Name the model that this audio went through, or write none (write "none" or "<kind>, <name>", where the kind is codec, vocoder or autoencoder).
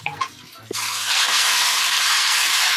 codec, SNAC